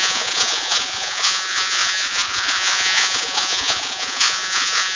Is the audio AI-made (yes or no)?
yes